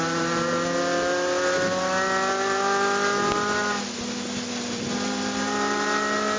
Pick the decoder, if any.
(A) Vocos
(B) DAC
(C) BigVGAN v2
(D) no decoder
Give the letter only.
D